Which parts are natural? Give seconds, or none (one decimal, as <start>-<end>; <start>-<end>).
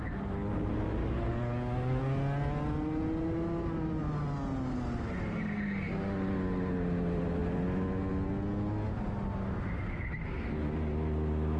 0.0-1.0; 2.0-11.6